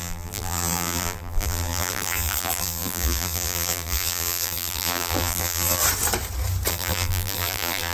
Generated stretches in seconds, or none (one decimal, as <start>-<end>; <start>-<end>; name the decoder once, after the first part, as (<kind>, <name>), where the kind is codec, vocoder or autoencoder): 0.0-5.8 (vocoder, BigVGAN v2); 6.7-7.9

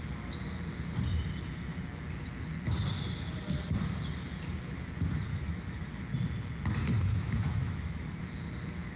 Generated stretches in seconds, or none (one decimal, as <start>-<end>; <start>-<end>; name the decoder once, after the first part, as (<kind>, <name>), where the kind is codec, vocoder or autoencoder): 5.3-6.0 (autoencoder, DAC-VAE); 7.1-8.2

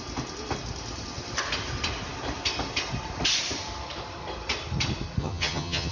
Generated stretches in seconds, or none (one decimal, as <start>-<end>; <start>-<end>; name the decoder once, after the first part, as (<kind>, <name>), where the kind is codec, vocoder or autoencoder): 5.2-5.9 (vocoder, HiFi-GAN)

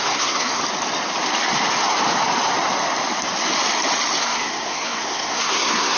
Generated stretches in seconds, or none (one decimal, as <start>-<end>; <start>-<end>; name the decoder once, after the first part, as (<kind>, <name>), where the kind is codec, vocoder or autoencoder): 0.0-0.6 (codec, SNAC); 4.2-6.0

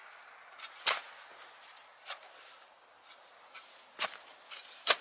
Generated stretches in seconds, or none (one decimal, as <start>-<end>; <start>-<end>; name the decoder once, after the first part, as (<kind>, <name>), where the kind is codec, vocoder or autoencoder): none

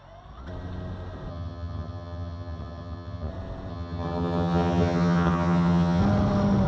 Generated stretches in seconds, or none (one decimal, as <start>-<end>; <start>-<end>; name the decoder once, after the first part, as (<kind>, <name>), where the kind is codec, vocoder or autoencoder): 1.3-3.3 (vocoder, HiFi-GAN); 3.7-6.0

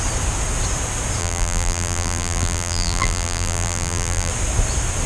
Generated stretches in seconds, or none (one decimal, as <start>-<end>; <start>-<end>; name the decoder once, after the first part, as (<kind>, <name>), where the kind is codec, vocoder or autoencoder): 1.2-4.3 (vocoder, BigVGAN v2)